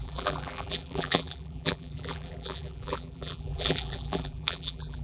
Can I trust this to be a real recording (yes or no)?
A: no